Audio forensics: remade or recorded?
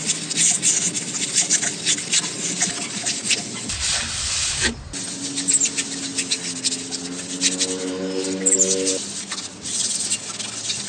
recorded